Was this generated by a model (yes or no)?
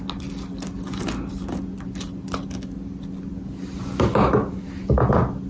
no